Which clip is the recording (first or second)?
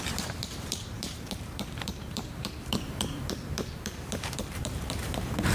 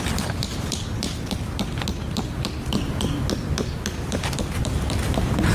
second